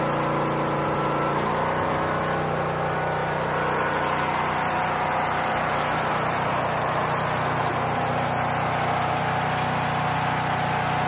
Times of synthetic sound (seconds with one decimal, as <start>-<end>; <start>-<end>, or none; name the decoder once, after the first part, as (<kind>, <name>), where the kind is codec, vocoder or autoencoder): 3.2-8.1 (vocoder, BigVGAN v2)